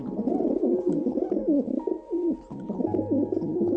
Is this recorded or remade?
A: recorded